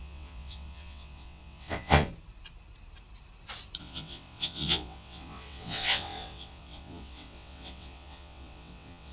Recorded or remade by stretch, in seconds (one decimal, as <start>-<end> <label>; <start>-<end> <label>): 0.0-2.1 remade; 2.1-3.8 recorded; 3.8-9.1 remade